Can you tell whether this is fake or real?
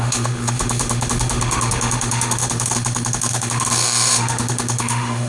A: fake